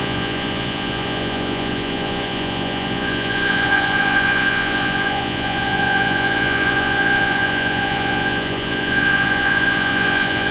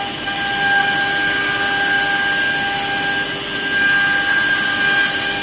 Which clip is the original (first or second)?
second